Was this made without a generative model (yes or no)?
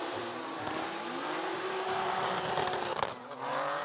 yes